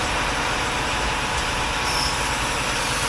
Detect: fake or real fake